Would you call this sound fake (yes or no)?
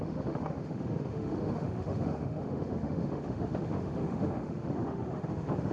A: yes